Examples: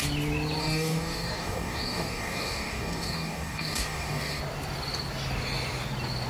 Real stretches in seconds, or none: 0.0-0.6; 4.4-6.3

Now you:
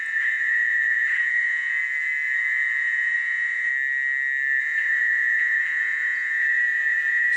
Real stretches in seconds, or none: 3.7-4.6

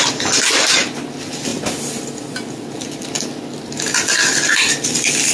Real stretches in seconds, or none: 0.0-5.3

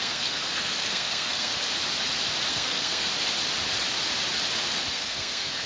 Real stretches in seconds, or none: 1.5-2.5; 3.1-4.9

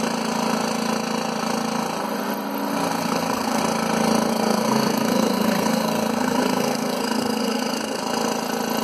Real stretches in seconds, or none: 0.0-2.9; 3.6-4.3; 8.0-8.8

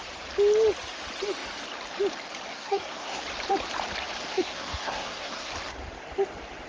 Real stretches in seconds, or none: 0.0-2.5; 3.2-4.3; 5.5-6.7